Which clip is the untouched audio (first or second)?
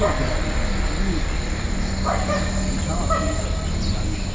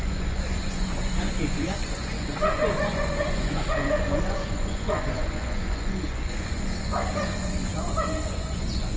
first